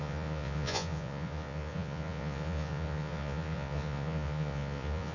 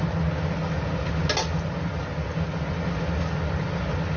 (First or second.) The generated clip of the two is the first